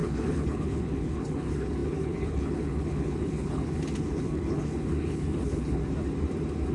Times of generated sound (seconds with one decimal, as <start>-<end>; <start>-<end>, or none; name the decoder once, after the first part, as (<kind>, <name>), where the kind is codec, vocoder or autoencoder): 0.0-5.8 (codec, HILCodec)